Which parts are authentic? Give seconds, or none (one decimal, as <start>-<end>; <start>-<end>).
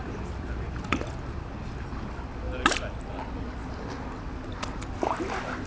0.0-5.7